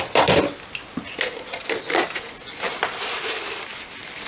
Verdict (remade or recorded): recorded